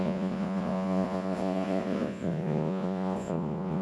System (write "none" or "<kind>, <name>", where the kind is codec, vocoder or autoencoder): vocoder, Vocos